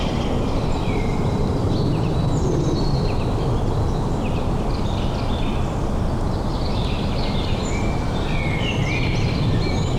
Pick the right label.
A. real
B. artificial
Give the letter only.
A